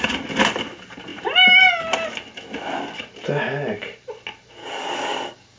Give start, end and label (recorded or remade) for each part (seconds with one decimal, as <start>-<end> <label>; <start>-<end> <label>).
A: 0.0-4.6 recorded; 4.6-5.6 remade